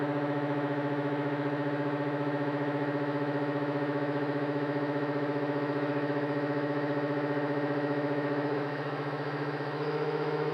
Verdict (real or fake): fake